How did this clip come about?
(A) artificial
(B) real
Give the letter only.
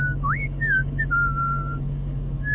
A